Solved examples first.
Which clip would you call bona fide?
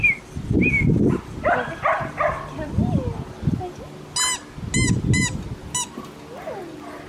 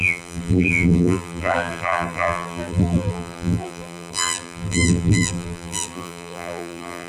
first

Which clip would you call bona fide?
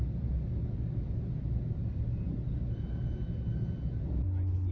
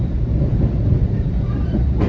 first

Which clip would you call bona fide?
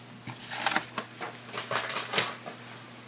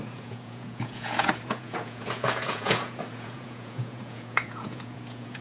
first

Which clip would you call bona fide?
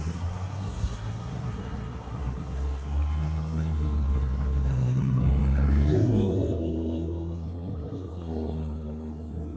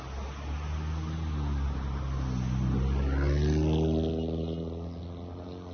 second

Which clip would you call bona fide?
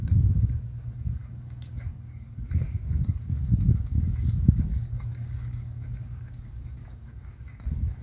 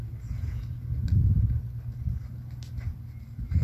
second